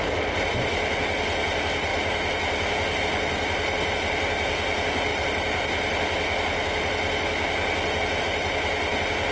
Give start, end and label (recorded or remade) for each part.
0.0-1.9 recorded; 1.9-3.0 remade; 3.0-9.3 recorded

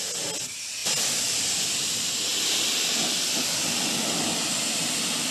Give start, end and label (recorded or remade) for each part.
0.0-5.3 recorded

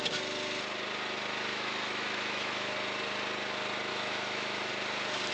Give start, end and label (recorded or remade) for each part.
0.0-1.5 recorded; 1.5-2.7 remade; 2.7-3.9 recorded; 3.9-4.7 remade; 4.7-5.3 recorded

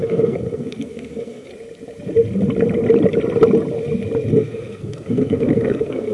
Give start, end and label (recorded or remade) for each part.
0.0-1.5 remade; 1.5-4.3 recorded; 4.3-6.1 remade

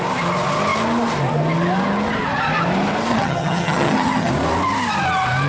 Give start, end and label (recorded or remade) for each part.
0.0-3.1 recorded; 3.1-4.3 remade; 4.3-5.5 recorded

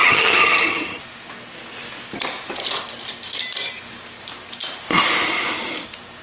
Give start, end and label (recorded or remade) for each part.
0.0-1.0 remade; 1.0-6.2 recorded

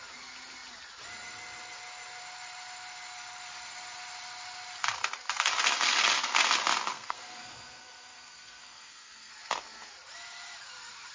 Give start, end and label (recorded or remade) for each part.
0.0-6.9 recorded; 6.9-9.3 remade; 9.3-11.1 recorded